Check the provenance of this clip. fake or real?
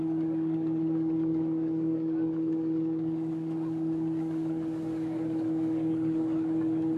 fake